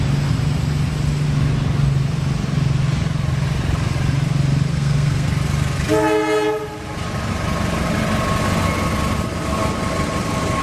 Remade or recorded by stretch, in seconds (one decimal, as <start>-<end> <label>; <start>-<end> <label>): 0.0-4.7 recorded; 4.7-5.3 remade; 5.3-10.6 recorded